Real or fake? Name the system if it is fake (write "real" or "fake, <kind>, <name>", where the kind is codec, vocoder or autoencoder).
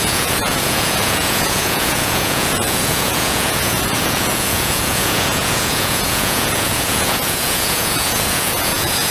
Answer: fake, vocoder, Vocos